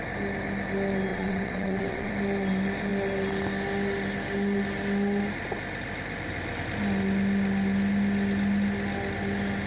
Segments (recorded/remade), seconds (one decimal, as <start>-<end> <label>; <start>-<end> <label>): 0.0-1.1 recorded; 1.1-2.1 remade; 2.1-9.7 recorded